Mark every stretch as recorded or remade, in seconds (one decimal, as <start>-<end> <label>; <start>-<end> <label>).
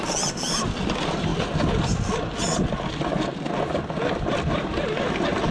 0.0-5.5 recorded